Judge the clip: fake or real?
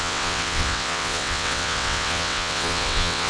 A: fake